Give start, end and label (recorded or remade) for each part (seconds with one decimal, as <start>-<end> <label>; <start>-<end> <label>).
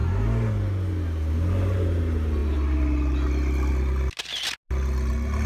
0.0-5.5 recorded